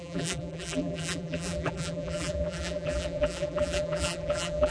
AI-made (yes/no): yes